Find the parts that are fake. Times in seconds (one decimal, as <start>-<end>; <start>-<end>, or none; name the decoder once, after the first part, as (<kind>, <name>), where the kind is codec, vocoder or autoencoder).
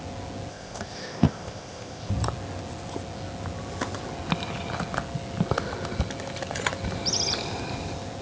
0.5-2.1 (codec, ZipCodec)